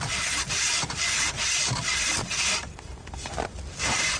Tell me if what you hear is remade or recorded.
remade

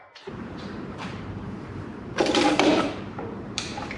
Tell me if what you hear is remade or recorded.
remade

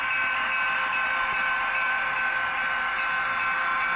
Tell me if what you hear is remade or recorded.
recorded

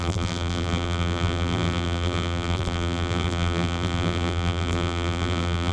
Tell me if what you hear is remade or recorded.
remade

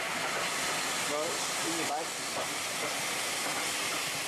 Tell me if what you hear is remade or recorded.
recorded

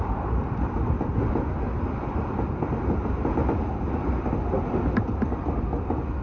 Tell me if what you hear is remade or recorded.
recorded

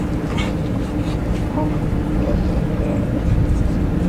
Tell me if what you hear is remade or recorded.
recorded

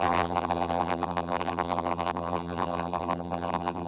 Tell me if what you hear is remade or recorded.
remade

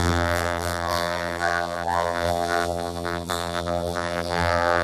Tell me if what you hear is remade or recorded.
remade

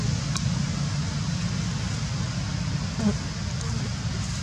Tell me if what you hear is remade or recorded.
recorded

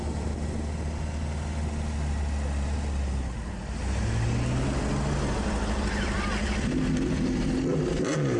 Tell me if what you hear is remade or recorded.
recorded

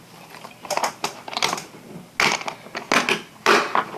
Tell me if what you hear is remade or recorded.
recorded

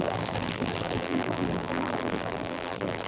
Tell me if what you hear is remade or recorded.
remade